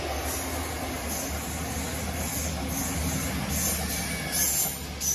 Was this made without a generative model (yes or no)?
yes